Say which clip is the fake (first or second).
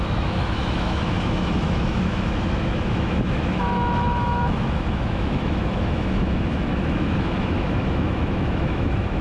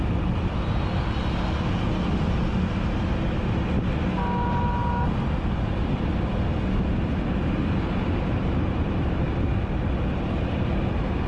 first